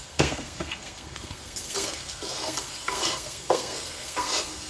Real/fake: fake